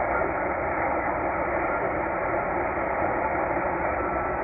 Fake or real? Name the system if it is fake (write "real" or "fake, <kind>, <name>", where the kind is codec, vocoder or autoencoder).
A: fake, vocoder, BigVGAN v2